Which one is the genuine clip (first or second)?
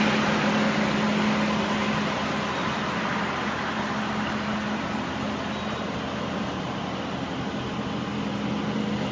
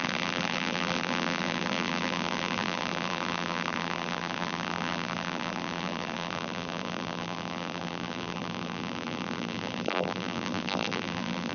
first